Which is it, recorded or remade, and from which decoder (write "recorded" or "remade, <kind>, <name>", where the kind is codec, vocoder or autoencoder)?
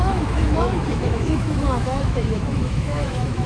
remade, autoencoder, DAC-VAE